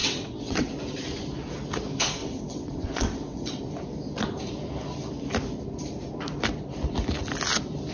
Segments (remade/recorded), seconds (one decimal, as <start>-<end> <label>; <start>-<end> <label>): 0.0-0.7 remade; 0.7-2.2 recorded; 2.2-3.6 remade; 3.6-7.9 recorded